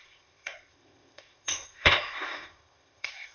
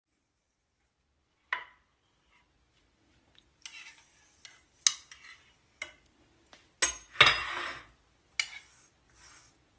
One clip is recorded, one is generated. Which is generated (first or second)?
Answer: first